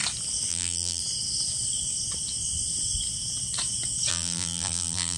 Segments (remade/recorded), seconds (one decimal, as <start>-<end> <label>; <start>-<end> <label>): 0.0-0.5 recorded; 0.5-1.0 remade; 1.0-4.1 recorded; 4.1-5.2 remade